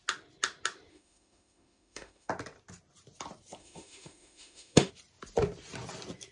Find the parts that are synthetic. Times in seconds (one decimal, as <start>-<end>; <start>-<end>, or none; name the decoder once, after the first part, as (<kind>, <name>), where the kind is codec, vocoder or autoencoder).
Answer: 0.9-2.3 (autoencoder, DAC-VAE); 3.6-4.9